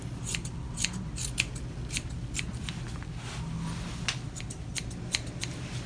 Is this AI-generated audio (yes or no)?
no